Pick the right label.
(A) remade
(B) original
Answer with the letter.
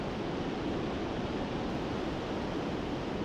B